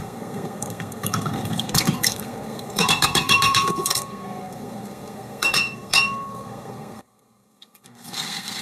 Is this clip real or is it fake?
fake